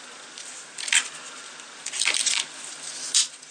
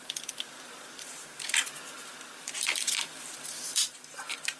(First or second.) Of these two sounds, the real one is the first